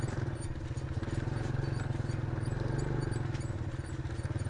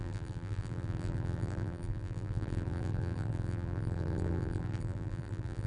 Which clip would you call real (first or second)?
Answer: first